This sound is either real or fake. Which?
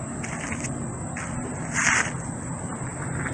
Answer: real